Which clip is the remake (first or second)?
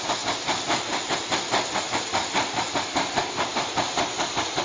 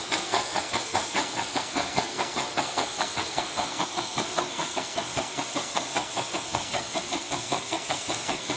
second